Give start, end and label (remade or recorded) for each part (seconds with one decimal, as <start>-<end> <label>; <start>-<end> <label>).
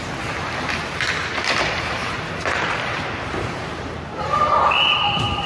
0.0-2.0 recorded; 2.0-5.5 remade